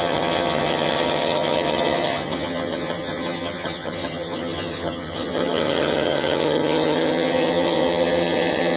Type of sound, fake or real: fake